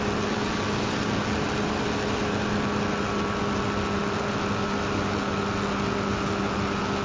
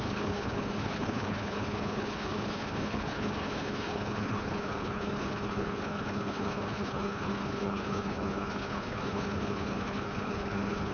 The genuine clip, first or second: first